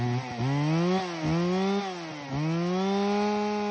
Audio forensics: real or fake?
real